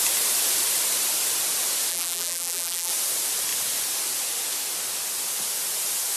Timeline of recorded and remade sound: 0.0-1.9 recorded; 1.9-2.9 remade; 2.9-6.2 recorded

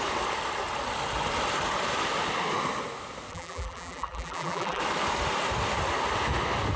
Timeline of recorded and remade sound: 0.0-3.3 recorded; 3.3-4.8 remade; 4.8-6.8 recorded

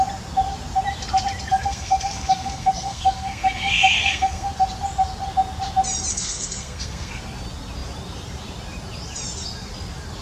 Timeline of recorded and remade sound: 0.0-1.6 recorded; 1.6-4.5 remade; 4.5-6.1 recorded; 6.1-7.2 remade; 7.2-10.2 recorded

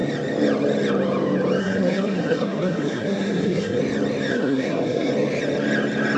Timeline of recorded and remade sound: 0.0-1.6 recorded; 1.6-3.8 remade; 3.8-4.3 recorded; 4.3-5.1 remade; 5.1-6.2 recorded

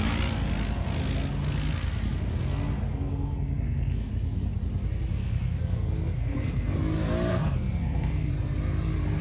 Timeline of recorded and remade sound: 0.0-2.9 recorded; 2.9-4.1 remade; 4.1-5.2 recorded; 5.2-6.8 remade; 6.8-7.3 recorded; 7.3-8.3 remade; 8.3-9.2 recorded

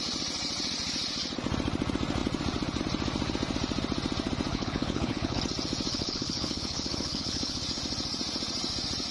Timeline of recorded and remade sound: 0.0-4.5 recorded; 4.5-5.4 remade; 5.4-5.9 recorded; 5.9-7.6 remade; 7.6-9.1 recorded

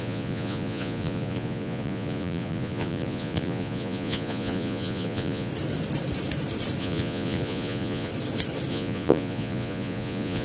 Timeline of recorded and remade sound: 0.0-5.5 remade; 5.5-6.8 recorded; 6.8-8.1 remade; 8.1-8.7 recorded; 8.7-10.4 remade